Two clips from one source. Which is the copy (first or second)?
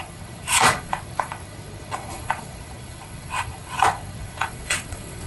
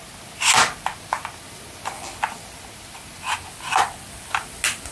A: first